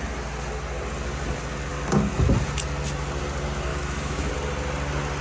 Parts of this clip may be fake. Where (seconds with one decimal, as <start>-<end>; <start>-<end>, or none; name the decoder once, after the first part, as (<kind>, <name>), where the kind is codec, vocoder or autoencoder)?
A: 3.7-4.3 (autoencoder, DAC-VAE)